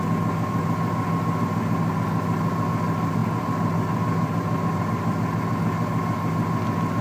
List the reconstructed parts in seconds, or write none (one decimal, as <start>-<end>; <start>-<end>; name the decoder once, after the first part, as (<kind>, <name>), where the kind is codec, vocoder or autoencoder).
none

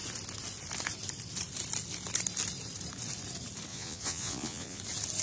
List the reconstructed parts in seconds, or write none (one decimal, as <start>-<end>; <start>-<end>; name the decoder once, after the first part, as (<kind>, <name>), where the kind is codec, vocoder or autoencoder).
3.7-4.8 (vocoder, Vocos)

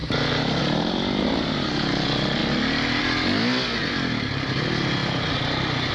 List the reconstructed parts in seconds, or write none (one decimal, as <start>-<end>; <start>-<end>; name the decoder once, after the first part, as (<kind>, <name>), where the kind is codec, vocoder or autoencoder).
none

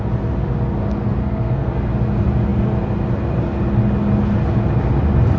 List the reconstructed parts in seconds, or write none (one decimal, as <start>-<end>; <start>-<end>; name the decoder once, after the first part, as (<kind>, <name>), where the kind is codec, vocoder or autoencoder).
1.2-1.7 (codec, SNAC)

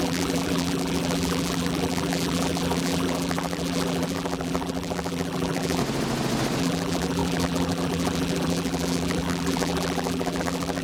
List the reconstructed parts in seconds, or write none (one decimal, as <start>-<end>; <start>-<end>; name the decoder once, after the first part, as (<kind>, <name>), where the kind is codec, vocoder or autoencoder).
0.0-5.8 (vocoder, BigVGAN v2); 6.6-10.8